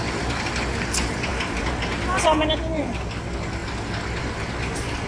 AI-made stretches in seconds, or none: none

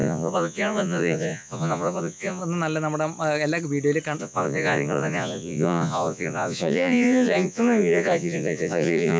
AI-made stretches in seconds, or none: 0.0-2.4 (vocoder, Vocos); 4.2-9.2

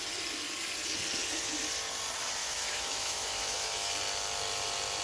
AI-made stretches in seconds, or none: 2.4-3.9 (autoencoder, DAC-VAE)

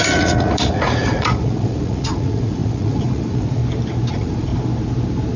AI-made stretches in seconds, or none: 0.0-3.6 (vocoder, Vocos); 4.1-4.5

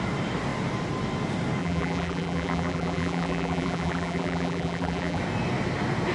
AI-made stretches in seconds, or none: 1.6-5.2 (vocoder, BigVGAN v2)

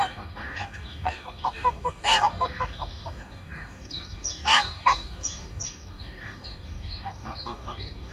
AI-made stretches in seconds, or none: 0.0-8.1 (codec, DAC)

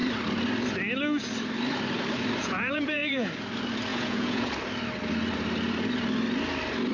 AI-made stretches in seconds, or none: 2.4-3.3 (vocoder, Vocos); 3.9-4.5